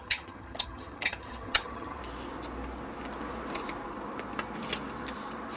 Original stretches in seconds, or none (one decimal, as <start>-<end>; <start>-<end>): 2.0-5.6